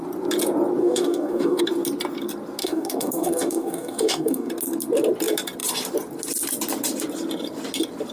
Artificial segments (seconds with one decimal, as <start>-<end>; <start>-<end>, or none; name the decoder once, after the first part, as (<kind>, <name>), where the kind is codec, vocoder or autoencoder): 0.8-1.6 (codec, DAC); 2.6-4.5

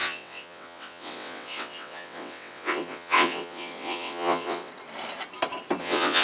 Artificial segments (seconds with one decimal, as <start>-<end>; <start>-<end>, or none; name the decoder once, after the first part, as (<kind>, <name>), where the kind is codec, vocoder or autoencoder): 0.0-4.7 (vocoder, WaveNeXt); 5.8-6.2

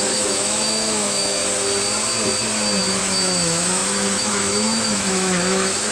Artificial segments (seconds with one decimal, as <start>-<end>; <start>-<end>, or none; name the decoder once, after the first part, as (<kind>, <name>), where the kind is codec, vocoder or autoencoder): 0.0-1.4 (autoencoder, DAC-VAE); 3.0-5.9